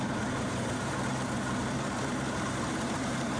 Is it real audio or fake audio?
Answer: fake